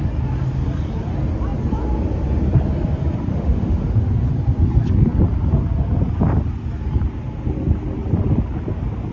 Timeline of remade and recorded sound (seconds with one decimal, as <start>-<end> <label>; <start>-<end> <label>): 0.0-3.3 recorded; 3.3-4.0 remade; 4.0-9.1 recorded